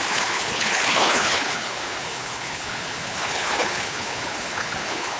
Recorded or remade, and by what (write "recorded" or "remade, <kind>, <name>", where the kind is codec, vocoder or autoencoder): remade, codec, HILCodec